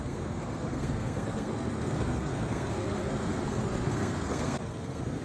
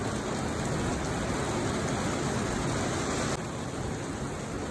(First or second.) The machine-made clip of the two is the first